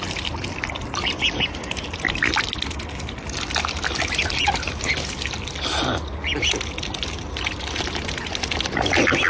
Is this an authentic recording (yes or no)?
yes